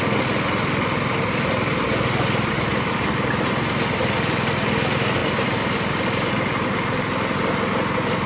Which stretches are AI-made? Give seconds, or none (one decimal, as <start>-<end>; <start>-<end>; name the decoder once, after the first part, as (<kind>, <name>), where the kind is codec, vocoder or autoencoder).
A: none